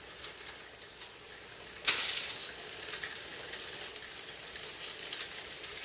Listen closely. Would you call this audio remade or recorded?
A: recorded